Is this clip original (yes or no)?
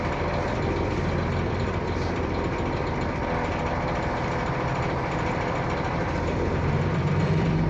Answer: no